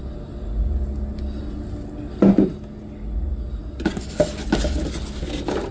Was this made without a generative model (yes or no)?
yes